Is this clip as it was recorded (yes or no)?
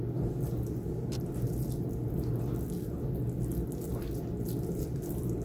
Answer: yes